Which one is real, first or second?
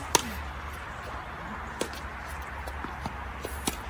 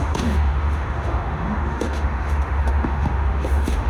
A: first